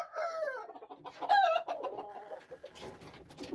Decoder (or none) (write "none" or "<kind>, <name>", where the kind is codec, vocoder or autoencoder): none